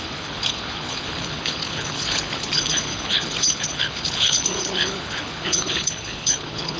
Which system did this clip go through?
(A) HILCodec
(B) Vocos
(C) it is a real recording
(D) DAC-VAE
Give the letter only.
A